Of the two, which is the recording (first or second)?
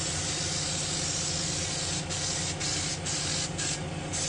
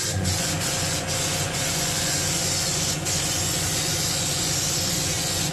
first